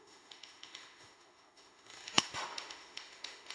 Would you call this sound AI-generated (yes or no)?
yes